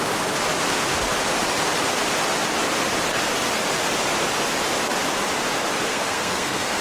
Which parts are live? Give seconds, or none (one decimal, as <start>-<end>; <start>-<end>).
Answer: 0.0-5.9